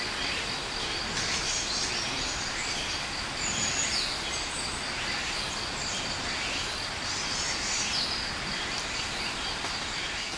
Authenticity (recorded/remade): recorded